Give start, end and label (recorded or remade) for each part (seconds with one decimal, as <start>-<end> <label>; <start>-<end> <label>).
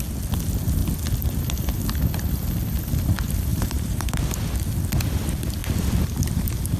0.0-3.5 recorded; 3.5-4.2 remade; 4.2-6.8 recorded